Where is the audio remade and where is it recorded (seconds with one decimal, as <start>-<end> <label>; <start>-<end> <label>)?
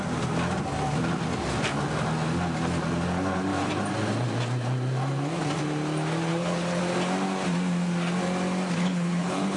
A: 0.0-6.3 recorded; 6.3-6.8 remade; 6.8-8.8 recorded; 8.8-9.6 remade